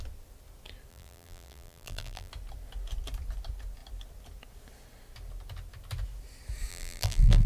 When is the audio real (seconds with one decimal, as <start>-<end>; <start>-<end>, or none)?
0.0-0.9; 2.3-6.7